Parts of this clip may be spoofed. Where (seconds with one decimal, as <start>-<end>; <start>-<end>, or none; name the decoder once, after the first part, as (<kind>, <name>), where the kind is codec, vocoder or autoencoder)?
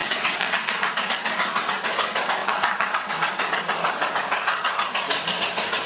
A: 0.0-0.9 (vocoder, WaveNeXt); 2.4-3.1